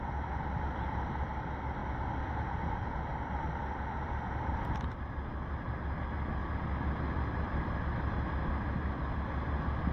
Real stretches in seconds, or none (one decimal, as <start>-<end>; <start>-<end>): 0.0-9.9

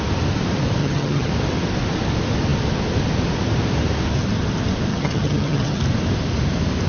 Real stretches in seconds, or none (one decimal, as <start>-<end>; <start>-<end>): 0.0-0.8; 1.3-4.9; 5.8-6.9

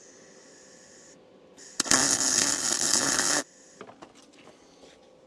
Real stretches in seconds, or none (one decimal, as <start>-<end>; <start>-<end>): 0.0-2.0; 3.4-5.3

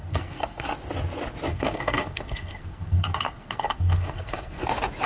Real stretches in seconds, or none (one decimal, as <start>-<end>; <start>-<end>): 0.7-1.5; 4.6-5.1

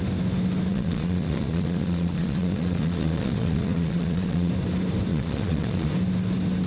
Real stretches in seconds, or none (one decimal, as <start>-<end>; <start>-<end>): 0.0-0.7; 4.5-5.1; 5.9-6.7